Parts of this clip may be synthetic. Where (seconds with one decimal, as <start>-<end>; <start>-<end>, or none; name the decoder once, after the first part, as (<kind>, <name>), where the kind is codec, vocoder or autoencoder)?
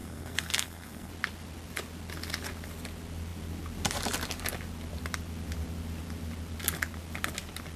0.0-1.1 (codec, SNAC)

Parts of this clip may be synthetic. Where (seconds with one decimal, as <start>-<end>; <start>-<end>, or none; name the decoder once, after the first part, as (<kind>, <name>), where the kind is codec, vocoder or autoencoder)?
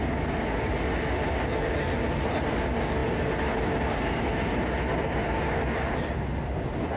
none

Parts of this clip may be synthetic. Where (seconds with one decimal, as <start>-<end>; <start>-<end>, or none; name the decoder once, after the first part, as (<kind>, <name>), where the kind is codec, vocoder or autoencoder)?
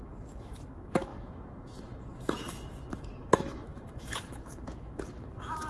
0.0-5.7 (autoencoder, DAC-VAE)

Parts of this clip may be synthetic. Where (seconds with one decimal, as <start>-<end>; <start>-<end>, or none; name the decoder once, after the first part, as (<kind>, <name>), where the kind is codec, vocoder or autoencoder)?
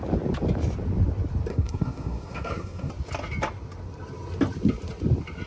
1.5-2.9 (codec, SNAC)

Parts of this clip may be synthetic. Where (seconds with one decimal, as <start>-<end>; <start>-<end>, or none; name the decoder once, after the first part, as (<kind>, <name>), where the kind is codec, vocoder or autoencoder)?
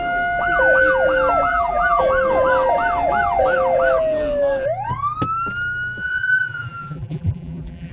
1.5-2.0 (vocoder, BigVGAN v2); 6.0-7.9